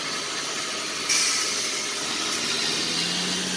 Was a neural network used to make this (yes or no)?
no